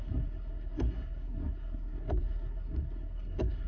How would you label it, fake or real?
fake